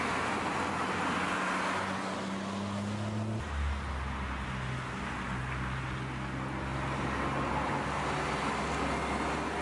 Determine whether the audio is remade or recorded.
recorded